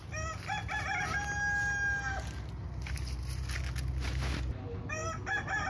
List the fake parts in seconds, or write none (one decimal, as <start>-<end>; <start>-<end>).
none